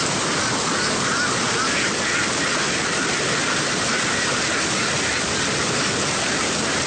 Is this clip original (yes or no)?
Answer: yes